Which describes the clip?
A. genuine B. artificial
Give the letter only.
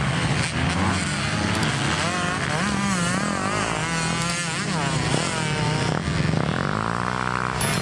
A